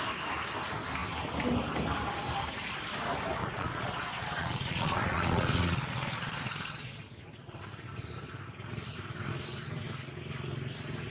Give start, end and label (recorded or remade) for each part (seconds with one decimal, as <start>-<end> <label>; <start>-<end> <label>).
0.0-3.4 recorded; 3.4-7.0 remade; 7.0-11.1 recorded